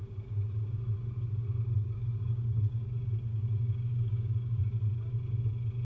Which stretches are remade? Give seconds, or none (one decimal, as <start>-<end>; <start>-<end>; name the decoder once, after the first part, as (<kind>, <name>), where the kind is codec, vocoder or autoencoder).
1.8-2.6 (codec, DAC); 3.3-4.6